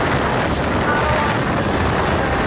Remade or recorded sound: recorded